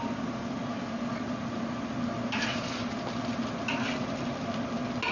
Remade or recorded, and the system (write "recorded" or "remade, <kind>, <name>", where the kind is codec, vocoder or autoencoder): recorded